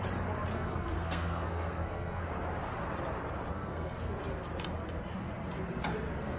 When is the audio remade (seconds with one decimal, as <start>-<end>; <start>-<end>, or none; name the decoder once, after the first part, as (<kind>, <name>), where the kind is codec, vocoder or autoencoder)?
0.5-2.3 (codec, SNAC); 3.5-4.2